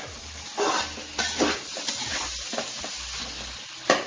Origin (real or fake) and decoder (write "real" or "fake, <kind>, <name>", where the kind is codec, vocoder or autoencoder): real